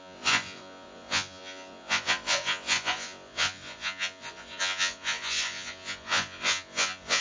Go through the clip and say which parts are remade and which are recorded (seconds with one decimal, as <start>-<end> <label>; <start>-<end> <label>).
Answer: 0.0-7.2 remade